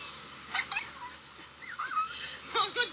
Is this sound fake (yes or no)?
no